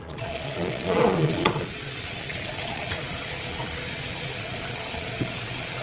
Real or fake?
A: fake